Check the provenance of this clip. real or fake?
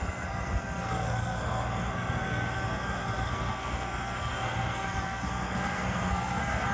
fake